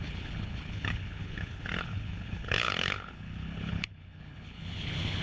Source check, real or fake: fake